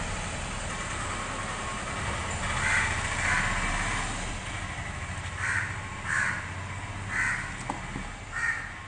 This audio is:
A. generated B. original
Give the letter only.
B